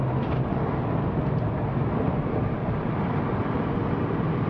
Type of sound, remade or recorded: remade